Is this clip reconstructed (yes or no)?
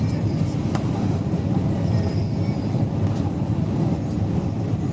no